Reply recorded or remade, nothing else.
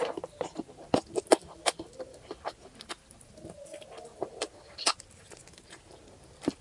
recorded